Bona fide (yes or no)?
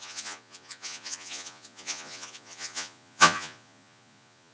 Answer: no